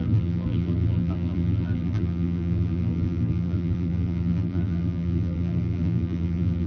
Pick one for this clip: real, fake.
fake